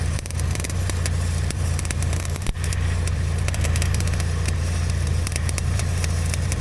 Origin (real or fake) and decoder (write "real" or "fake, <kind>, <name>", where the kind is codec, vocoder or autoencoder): fake, vocoder, BigVGAN v2